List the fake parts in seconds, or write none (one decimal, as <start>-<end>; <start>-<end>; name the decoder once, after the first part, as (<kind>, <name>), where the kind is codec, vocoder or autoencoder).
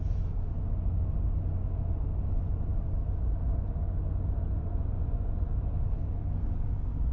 4.6-5.5 (vocoder, Vocos)